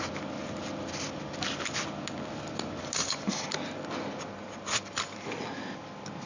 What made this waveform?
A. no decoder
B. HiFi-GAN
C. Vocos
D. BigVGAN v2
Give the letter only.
A